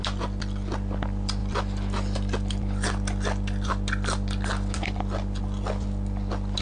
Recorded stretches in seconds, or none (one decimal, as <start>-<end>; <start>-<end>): 0.0-6.6